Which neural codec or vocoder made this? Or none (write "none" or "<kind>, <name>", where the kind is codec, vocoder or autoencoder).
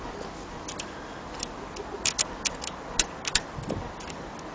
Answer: none